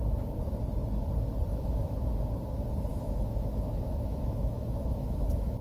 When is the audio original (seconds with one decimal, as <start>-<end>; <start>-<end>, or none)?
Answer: 0.0-1.5; 2.2-2.9

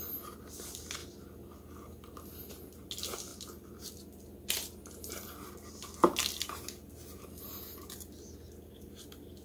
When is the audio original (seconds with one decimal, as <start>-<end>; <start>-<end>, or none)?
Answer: 0.0-9.4

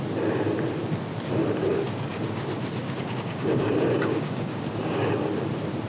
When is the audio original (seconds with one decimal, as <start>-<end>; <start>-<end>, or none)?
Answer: 0.0-1.6; 5.1-5.9